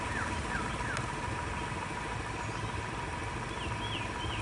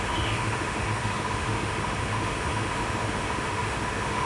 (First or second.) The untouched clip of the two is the first